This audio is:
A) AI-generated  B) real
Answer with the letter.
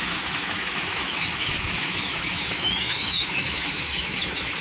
A